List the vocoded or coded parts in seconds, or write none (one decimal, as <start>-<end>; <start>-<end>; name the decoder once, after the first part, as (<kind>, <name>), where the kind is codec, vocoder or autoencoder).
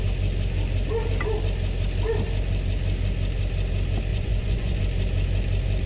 4.1-4.8 (vocoder, Vocos)